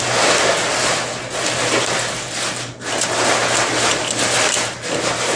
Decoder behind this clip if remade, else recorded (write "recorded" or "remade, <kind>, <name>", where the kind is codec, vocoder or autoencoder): recorded